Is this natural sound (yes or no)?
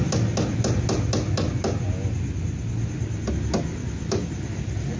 yes